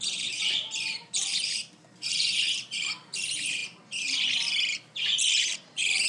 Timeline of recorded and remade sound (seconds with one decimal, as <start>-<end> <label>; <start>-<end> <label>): 0.0-3.6 remade; 3.6-5.4 recorded; 5.4-6.1 remade